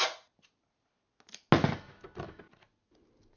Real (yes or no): yes